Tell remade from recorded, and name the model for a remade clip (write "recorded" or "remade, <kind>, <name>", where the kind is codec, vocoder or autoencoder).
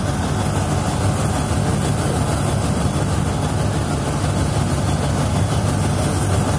recorded